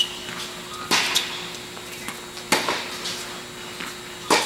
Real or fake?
real